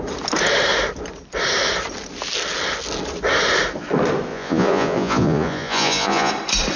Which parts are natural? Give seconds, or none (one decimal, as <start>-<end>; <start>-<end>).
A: 0.0-4.3; 6.3-6.8